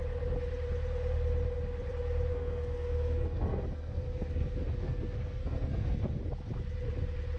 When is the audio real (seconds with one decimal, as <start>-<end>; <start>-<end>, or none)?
0.0-2.3; 6.2-7.4